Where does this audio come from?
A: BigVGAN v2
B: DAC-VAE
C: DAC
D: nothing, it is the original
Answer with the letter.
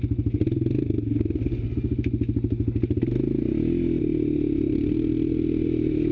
D